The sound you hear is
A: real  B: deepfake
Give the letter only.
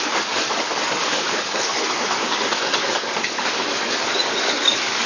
B